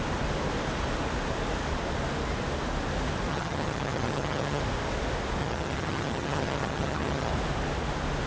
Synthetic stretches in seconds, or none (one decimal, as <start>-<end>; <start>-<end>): 3.3-4.6; 5.4-7.3